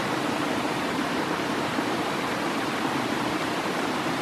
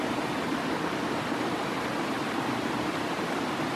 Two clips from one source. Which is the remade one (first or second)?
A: first